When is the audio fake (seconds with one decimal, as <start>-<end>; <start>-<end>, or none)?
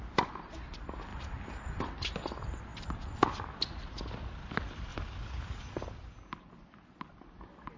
1.1-1.8; 4.9-5.9